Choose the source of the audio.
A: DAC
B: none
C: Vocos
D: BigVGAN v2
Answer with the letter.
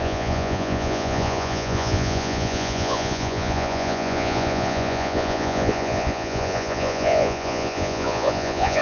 C